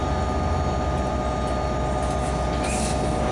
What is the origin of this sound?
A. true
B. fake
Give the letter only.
A